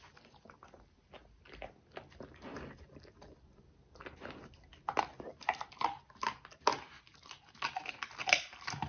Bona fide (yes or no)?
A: yes